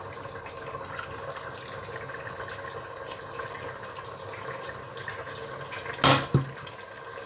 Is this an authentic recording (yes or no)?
yes